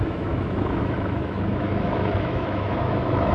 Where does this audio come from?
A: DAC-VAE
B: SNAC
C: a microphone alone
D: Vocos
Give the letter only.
A